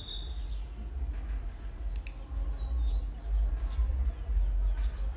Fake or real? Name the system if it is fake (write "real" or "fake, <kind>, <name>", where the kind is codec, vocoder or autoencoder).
real